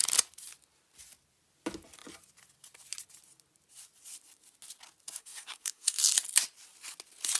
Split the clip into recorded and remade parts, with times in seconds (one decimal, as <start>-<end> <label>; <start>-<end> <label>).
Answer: 0.0-5.2 recorded; 5.2-6.0 remade; 6.0-7.4 recorded